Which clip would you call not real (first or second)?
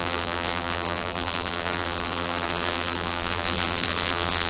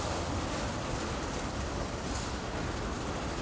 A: first